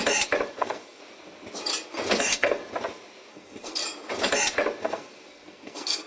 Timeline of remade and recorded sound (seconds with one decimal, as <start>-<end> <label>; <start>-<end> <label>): 0.0-0.5 recorded; 0.5-1.0 remade; 1.0-2.2 recorded; 2.2-2.6 remade; 2.6-3.3 recorded; 3.3-3.8 remade; 3.8-4.8 recorded; 4.8-6.1 remade